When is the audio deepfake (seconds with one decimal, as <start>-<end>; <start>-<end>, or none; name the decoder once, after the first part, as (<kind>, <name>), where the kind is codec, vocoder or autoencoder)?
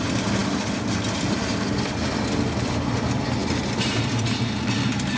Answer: none